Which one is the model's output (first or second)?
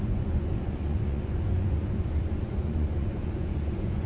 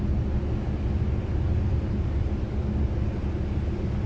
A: first